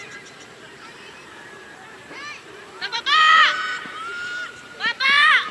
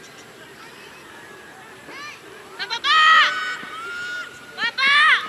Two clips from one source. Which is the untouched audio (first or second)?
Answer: second